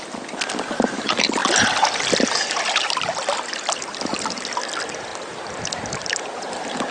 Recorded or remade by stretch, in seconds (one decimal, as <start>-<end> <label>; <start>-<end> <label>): 0.0-6.9 recorded